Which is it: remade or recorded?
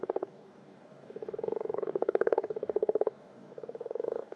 remade